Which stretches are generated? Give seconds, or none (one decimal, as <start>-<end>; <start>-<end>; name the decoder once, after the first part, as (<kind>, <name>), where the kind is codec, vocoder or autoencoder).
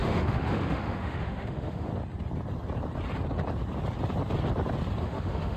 0.0-1.9 (autoencoder, DAC-VAE); 5.0-5.6